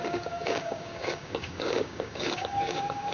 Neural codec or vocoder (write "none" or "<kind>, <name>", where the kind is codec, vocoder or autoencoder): codec, DAC